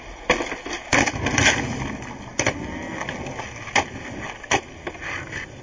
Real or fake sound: real